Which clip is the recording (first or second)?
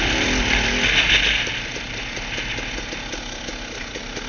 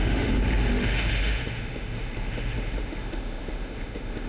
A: first